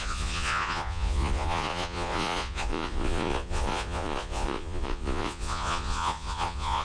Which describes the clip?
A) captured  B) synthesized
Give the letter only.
B